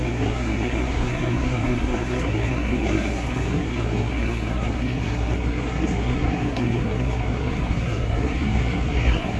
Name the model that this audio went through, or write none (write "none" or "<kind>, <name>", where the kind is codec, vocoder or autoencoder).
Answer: codec, SNAC